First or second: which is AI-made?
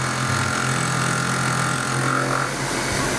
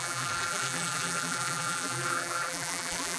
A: second